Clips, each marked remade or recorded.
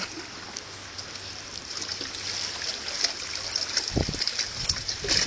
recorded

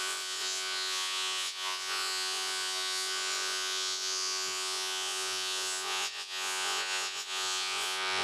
remade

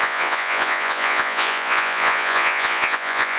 remade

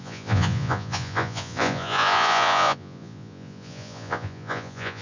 remade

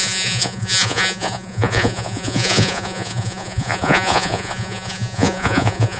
remade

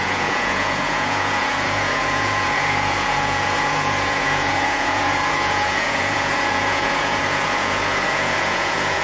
remade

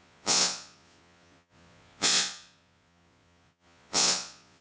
remade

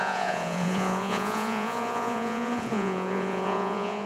remade